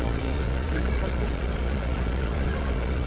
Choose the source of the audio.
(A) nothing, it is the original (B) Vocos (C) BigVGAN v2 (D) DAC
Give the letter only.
B